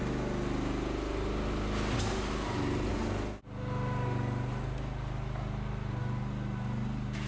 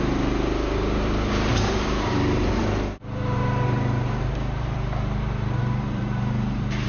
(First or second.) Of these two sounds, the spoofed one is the second